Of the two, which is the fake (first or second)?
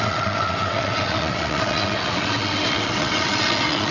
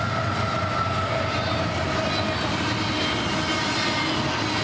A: first